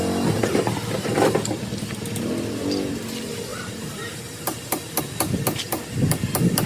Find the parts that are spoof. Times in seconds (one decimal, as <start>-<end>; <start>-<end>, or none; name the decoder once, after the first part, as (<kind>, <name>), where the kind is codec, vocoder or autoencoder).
3.5-5.0 (vocoder, BigVGAN v2)

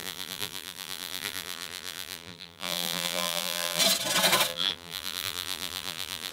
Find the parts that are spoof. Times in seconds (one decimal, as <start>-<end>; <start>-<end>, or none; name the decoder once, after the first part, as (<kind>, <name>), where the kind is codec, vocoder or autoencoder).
0.0-3.8 (vocoder, BigVGAN v2); 4.5-6.3

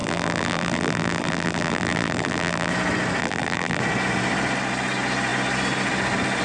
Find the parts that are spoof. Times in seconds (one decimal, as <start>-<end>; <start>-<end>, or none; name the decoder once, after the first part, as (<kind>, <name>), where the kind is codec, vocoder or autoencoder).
0.0-2.7 (vocoder, BigVGAN v2); 3.2-3.8

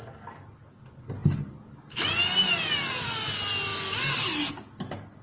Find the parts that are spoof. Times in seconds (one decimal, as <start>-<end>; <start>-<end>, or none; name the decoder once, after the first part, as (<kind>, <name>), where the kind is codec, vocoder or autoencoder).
none